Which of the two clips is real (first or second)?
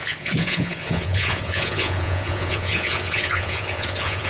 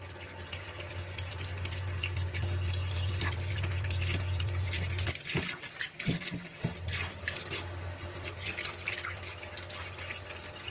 second